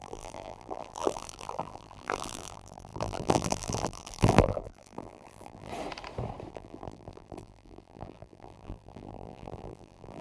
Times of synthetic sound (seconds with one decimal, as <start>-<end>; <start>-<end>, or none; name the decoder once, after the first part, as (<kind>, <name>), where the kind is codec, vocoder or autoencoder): 0.0-5.7 (vocoder, BigVGAN v2); 6.5-10.2